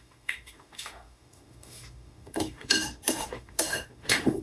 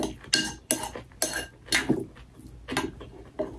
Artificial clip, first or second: first